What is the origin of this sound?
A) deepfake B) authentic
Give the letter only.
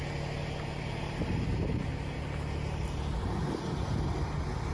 B